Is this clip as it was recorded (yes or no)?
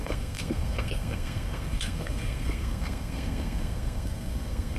no